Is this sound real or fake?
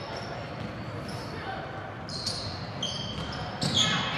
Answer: real